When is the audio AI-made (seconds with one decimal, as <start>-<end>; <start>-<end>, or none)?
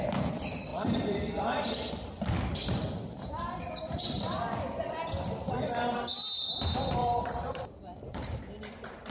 0.7-1.9; 2.6-4.4; 7.0-8.4